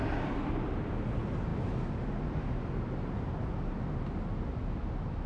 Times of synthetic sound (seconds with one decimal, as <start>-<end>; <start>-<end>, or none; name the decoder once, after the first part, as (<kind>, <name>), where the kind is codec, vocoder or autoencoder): none